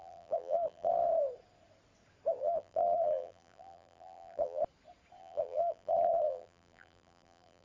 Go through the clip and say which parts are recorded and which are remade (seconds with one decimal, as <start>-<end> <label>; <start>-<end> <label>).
0.0-0.9 remade; 0.9-2.4 recorded; 2.4-4.6 remade; 4.6-5.2 recorded; 5.2-7.6 remade